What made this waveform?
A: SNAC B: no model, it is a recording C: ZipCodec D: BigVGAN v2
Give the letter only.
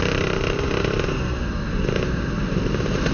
D